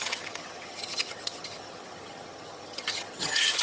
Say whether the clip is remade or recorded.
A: remade